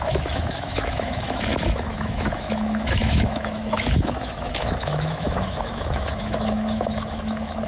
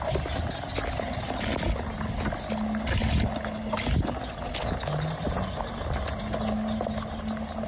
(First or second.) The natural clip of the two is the second